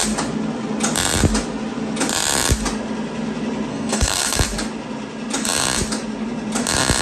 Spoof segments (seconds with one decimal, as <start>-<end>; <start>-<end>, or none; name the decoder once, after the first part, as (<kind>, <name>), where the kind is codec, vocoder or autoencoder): 3.7-4.4 (codec, SNAC)